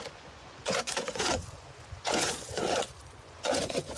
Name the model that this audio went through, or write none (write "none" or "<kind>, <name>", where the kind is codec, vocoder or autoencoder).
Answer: vocoder, Vocos